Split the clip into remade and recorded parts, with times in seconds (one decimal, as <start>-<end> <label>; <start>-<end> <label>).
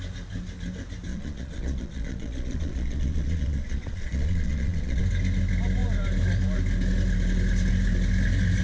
0.0-1.1 recorded; 1.1-5.0 remade; 5.0-8.6 recorded